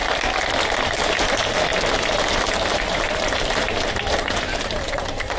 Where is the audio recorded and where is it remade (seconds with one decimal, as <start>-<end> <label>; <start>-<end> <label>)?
0.0-0.7 recorded; 0.7-1.7 remade; 1.7-2.2 recorded; 2.2-5.4 remade